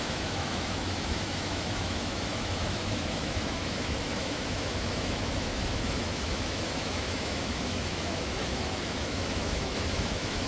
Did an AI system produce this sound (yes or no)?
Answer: yes